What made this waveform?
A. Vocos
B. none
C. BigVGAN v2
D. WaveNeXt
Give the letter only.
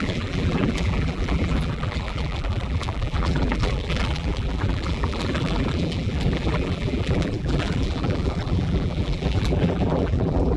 C